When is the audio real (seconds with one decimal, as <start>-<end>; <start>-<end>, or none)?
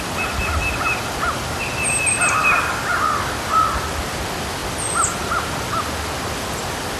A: 0.0-2.4; 3.0-7.0